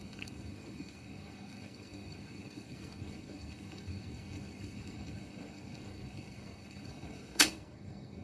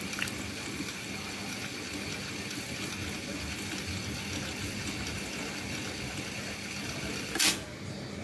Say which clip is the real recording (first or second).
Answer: second